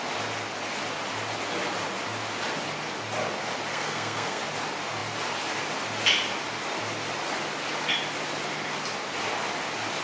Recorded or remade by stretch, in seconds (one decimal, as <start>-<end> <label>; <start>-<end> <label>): 0.0-3.7 recorded; 3.7-4.4 remade; 4.4-10.0 recorded